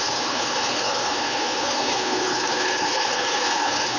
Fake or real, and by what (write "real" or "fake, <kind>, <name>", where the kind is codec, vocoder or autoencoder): fake, codec, HILCodec